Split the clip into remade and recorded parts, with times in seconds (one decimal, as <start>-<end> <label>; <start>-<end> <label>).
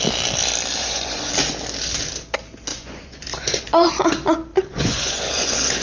0.0-0.8 recorded; 0.8-1.3 remade; 1.3-2.7 recorded; 2.7-3.6 remade; 3.6-4.5 recorded; 4.5-5.8 remade